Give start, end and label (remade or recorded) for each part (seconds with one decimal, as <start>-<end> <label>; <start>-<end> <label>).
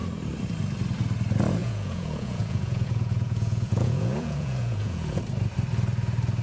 0.0-1.6 recorded; 1.6-5.2 remade; 5.2-6.4 recorded